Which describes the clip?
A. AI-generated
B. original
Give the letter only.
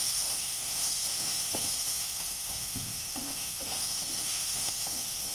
A